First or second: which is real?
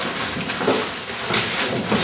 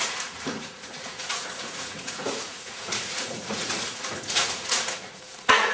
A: first